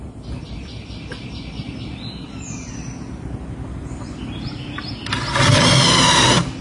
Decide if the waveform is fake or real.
real